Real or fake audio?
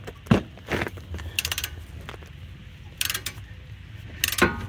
real